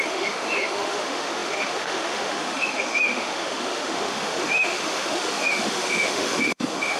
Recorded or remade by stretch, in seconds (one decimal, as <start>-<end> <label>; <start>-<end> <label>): 0.0-7.0 remade